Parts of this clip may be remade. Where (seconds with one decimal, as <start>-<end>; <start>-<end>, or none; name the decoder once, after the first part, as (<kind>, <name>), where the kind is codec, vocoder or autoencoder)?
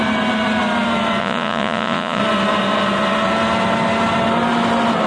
1.2-2.2 (vocoder, Vocos)